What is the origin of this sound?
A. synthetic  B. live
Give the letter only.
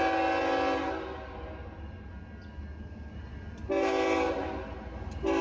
B